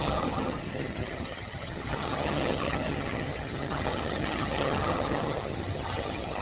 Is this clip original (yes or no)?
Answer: no